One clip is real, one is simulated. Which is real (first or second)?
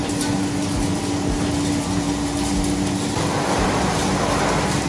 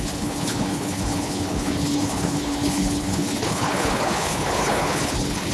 first